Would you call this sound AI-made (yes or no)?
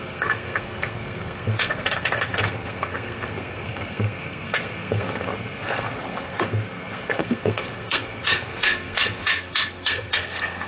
yes